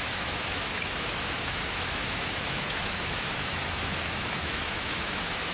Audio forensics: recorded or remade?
remade